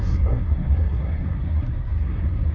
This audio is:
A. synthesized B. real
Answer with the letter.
A